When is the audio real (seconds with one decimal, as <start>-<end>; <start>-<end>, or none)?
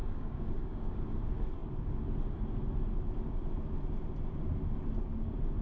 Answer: 0.9-5.6